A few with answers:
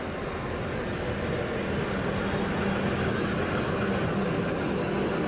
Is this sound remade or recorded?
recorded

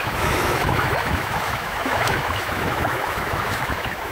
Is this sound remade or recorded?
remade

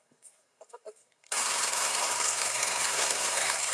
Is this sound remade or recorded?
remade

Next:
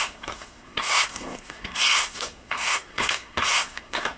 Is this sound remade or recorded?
remade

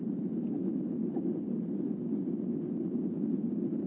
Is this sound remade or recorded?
recorded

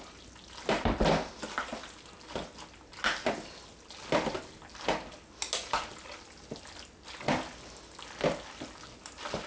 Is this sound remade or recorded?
recorded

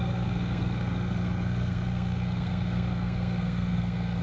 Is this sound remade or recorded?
remade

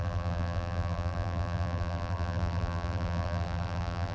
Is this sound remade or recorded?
remade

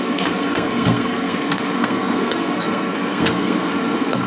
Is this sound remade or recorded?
remade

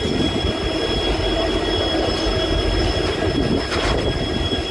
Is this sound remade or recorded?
recorded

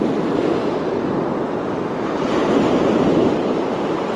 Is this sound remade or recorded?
recorded